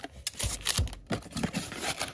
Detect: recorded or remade recorded